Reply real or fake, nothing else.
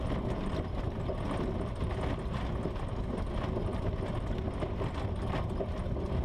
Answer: real